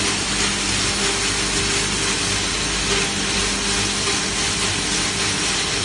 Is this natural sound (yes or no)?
yes